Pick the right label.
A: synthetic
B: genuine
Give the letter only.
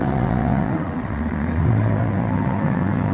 A